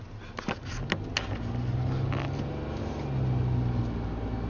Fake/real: real